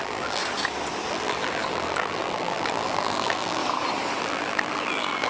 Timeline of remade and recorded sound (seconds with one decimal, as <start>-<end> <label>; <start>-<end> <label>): 0.0-0.4 remade; 0.4-1.1 recorded; 1.1-3.6 remade; 3.6-4.2 recorded; 4.2-5.3 remade